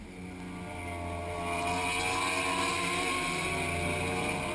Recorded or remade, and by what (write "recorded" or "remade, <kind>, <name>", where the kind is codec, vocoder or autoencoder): recorded